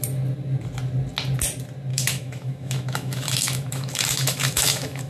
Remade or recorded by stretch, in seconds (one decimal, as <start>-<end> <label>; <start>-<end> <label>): 0.0-1.9 recorded; 1.9-5.1 remade